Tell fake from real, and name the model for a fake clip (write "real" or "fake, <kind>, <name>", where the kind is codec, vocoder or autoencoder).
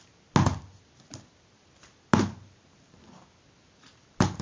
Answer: real